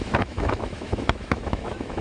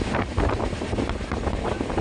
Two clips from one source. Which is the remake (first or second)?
first